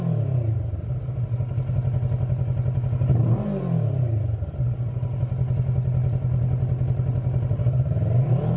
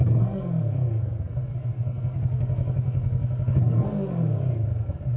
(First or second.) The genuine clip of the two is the first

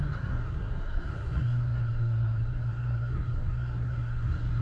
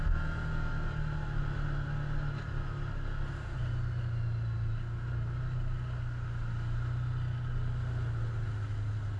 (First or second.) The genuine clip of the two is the second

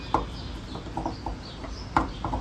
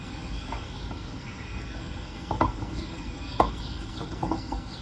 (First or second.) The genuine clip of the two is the first